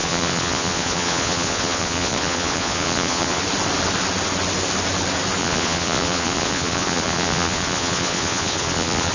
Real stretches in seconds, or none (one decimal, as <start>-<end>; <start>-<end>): 3.4-5.4